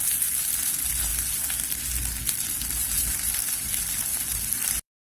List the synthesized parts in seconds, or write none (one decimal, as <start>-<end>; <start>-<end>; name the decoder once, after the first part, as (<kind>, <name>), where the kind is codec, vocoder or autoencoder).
2.2-3.6 (vocoder, BigVGAN v2); 4.1-5.1

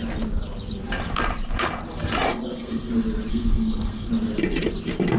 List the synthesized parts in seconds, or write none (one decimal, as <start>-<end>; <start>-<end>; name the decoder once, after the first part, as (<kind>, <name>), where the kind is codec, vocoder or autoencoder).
2.3-2.9 (codec, SNAC); 3.3-4.1

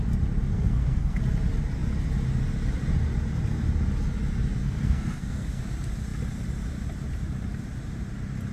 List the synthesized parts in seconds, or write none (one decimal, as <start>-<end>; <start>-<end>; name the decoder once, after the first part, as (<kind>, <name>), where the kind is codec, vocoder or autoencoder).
0.5-1.2 (codec, SNAC); 4.6-5.6

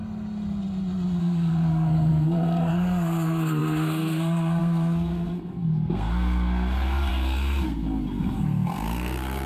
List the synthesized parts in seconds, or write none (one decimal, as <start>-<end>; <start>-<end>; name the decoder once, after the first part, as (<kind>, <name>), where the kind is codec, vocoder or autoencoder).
1.2-9.5 (codec, SNAC)

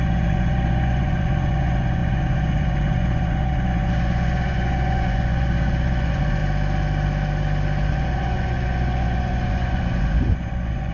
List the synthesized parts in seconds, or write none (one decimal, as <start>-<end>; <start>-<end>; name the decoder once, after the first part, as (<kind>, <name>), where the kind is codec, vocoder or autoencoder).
0.0-6.4 (vocoder, Vocos); 7.9-10.9

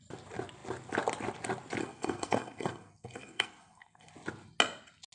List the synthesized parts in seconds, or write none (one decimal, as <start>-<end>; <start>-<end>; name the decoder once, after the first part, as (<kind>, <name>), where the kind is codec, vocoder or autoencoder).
1.8-4.1 (codec, SNAC)

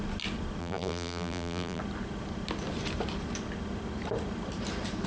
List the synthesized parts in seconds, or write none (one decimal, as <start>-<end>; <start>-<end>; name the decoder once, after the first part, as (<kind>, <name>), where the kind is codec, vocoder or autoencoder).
0.6-1.8 (vocoder, BigVGAN v2)

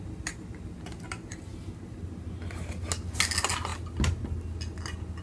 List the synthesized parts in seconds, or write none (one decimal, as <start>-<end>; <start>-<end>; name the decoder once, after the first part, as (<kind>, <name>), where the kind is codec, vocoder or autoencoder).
none